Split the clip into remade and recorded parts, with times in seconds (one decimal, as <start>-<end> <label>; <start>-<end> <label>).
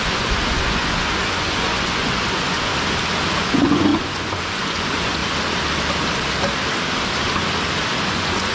0.0-2.7 remade; 2.7-3.4 recorded; 3.4-5.2 remade; 5.2-8.1 recorded; 8.1-8.5 remade